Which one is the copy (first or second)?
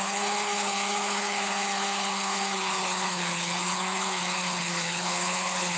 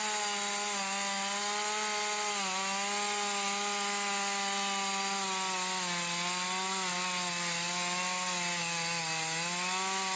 first